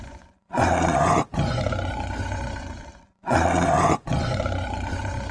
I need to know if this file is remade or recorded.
remade